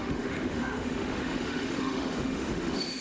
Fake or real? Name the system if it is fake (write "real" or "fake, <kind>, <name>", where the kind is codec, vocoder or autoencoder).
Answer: fake, autoencoder, DAC-VAE